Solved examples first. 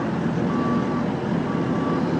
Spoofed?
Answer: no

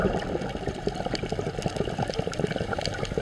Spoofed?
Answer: no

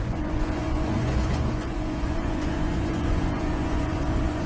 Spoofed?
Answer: yes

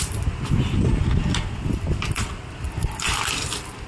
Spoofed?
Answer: no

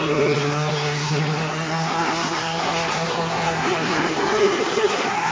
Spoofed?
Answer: yes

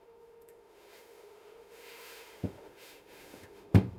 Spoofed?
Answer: yes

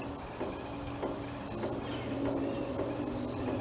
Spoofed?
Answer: no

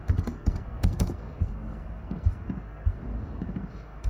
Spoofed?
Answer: yes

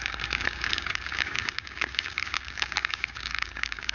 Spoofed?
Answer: yes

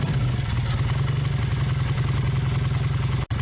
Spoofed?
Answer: no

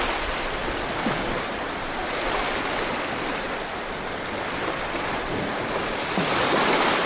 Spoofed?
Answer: no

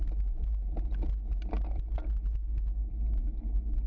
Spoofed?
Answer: no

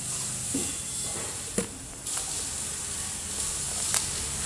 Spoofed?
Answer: no